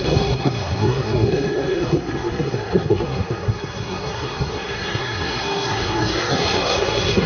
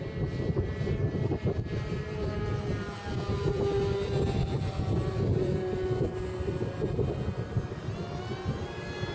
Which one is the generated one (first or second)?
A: first